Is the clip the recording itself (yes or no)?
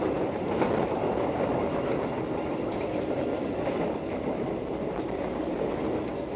yes